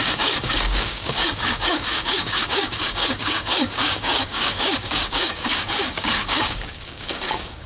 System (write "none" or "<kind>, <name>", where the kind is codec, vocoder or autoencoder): codec, DAC